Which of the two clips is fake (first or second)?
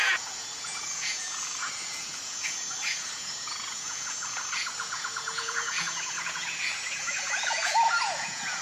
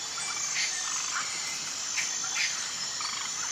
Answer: first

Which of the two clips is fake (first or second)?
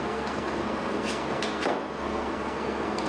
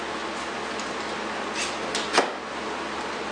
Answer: first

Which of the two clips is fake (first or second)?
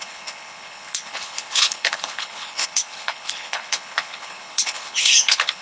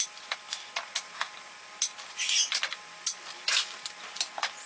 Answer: first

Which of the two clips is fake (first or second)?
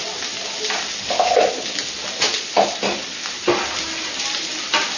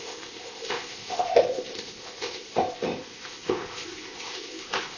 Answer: second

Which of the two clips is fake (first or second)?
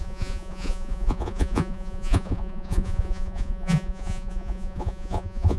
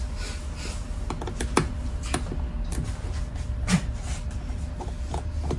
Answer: first